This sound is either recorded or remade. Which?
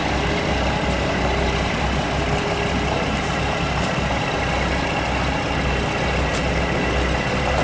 recorded